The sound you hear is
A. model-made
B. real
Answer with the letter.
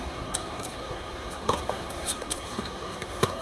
A